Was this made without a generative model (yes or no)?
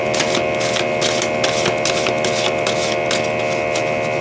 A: yes